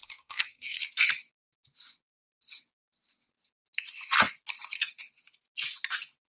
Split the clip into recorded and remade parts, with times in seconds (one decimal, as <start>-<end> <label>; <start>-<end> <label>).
0.0-0.8 remade; 0.8-6.3 recorded